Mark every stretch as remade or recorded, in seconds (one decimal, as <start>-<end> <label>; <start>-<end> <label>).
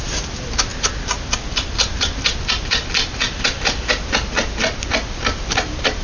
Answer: 0.0-6.0 recorded